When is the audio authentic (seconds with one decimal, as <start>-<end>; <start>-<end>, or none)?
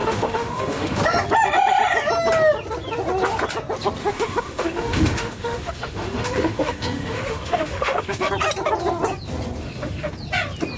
1.0-4.0; 8.3-9.6; 10.1-10.8